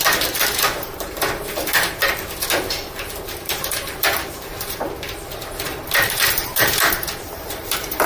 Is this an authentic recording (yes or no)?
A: no